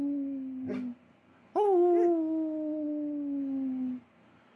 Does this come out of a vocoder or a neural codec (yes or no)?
no